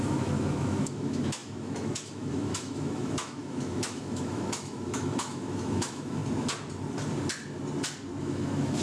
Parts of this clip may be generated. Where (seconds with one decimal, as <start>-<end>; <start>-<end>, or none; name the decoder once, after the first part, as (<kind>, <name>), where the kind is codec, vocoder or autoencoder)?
0.0-6.2 (autoencoder, DAC-VAE); 8.2-8.8